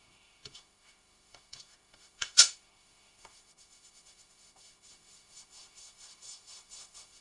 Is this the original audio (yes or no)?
no